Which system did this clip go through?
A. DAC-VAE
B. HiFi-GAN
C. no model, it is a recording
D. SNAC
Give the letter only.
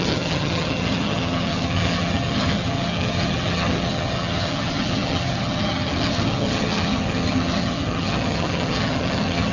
B